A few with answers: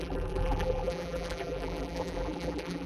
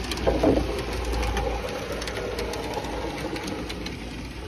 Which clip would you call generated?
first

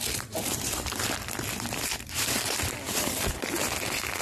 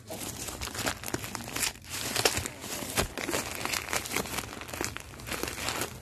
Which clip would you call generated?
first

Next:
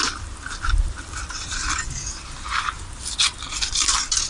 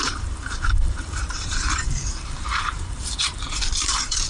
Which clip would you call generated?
second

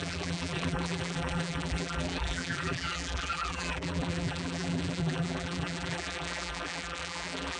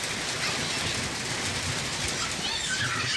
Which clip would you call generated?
first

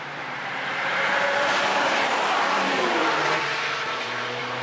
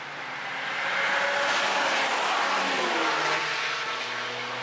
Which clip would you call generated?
first